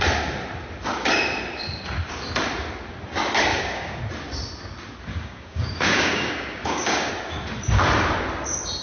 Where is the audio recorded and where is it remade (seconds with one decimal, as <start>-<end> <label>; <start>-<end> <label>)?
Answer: 0.0-3.5 recorded; 3.5-4.0 remade; 4.0-5.1 recorded; 5.1-7.1 remade; 7.1-8.8 recorded